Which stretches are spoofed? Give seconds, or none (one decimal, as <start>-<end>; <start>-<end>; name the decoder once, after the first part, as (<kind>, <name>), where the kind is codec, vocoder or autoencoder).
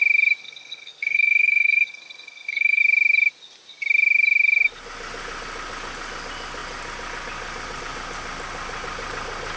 0.4-2.8 (codec, SNAC)